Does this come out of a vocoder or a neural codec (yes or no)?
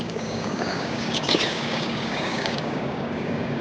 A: yes